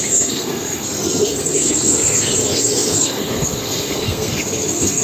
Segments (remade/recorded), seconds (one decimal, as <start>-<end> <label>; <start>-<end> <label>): 0.0-5.0 remade